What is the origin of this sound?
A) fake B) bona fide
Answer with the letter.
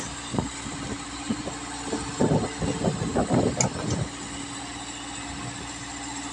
B